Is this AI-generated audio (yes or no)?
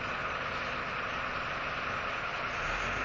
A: no